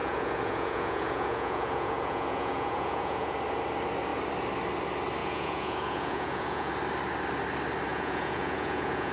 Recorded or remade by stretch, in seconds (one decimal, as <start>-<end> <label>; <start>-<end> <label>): 0.0-3.3 remade; 3.3-5.2 recorded; 5.2-6.7 remade; 6.7-7.9 recorded; 7.9-9.1 remade

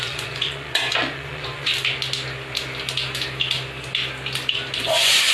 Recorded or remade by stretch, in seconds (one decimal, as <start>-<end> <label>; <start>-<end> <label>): 0.0-1.7 remade; 1.7-4.8 recorded; 4.8-5.3 remade

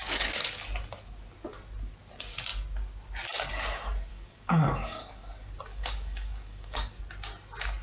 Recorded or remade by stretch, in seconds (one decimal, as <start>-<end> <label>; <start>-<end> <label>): 0.0-4.1 recorded; 4.1-5.1 remade; 5.1-5.7 recorded; 5.7-7.0 remade; 7.0-7.8 recorded